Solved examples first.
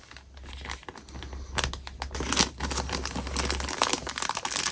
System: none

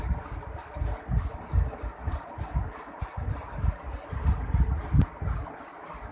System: none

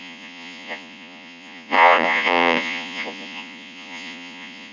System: vocoder, Vocos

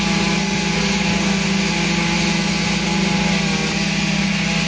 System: none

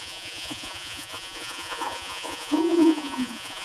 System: vocoder, Vocos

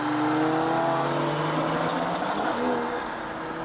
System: none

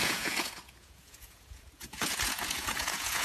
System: vocoder, Vocos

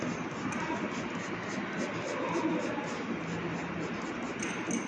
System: none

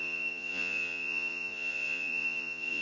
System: vocoder, Vocos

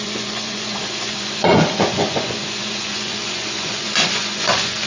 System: vocoder, Vocos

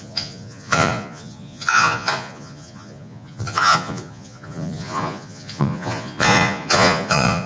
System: vocoder, Vocos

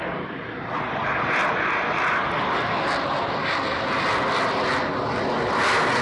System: none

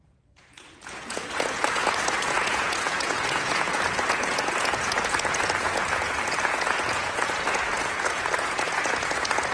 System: vocoder, Vocos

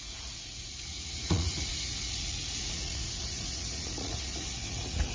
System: vocoder, Vocos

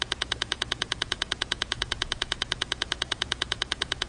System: vocoder, Vocos